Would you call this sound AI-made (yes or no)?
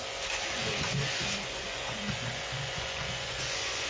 yes